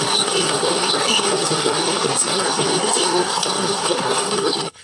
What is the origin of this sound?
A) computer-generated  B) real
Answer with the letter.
A